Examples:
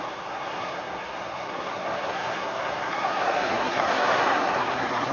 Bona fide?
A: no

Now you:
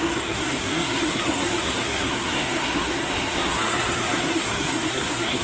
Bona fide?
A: no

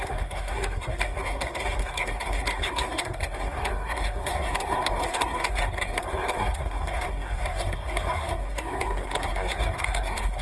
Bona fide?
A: no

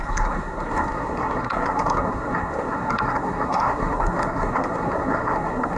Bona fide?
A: no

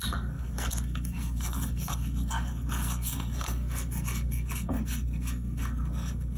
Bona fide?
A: no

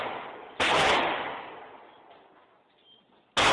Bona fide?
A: yes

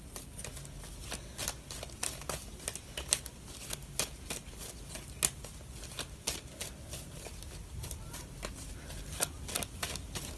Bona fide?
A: yes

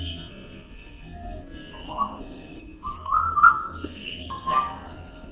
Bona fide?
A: no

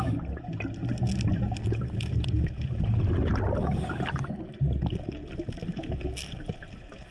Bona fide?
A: yes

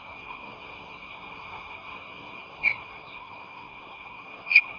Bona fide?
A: no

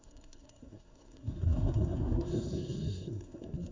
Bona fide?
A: no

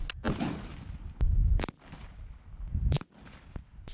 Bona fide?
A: yes